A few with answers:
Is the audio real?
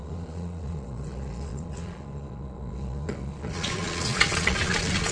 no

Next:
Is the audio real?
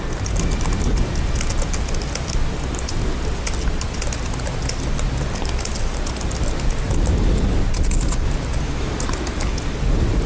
yes